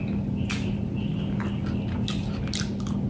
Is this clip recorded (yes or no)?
yes